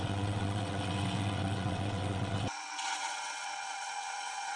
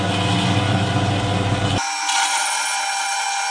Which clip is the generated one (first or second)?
first